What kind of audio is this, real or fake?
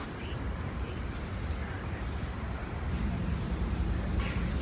fake